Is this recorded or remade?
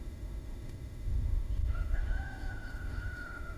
remade